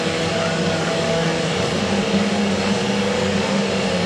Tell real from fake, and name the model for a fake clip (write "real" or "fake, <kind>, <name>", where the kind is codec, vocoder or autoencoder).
fake, codec, DAC